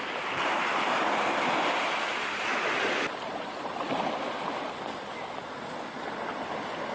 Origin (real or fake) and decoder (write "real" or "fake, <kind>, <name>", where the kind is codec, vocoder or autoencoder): real